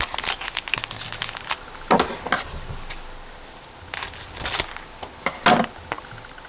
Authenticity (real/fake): real